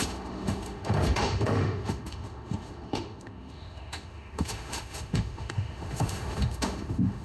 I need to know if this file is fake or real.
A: fake